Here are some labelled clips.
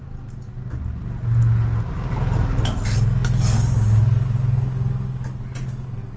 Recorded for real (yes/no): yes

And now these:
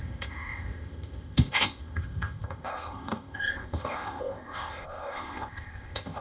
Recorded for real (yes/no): no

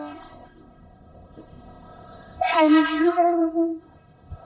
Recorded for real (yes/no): no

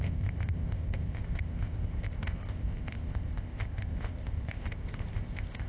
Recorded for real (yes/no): no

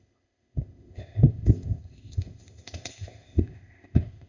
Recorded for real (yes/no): no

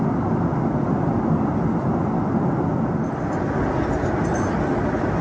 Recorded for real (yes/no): yes